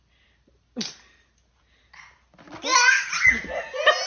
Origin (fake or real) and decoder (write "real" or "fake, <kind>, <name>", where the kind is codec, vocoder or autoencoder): real